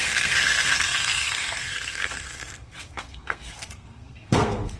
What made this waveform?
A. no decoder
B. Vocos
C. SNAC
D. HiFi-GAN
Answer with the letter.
C